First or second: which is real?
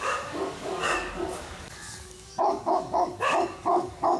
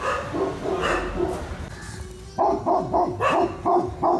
second